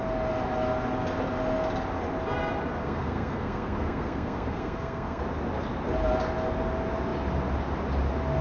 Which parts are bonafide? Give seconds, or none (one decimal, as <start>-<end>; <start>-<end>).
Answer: 0.0-2.8; 5.2-8.4